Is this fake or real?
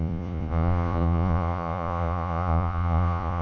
fake